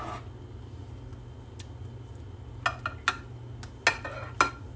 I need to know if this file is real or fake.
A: real